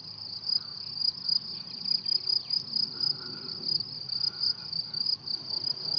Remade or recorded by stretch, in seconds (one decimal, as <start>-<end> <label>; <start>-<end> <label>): 0.0-6.0 recorded